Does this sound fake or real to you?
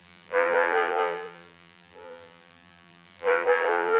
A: fake